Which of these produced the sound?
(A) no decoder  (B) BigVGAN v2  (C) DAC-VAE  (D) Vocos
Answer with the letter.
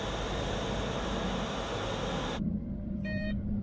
B